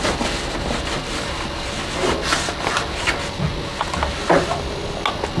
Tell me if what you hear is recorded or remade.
recorded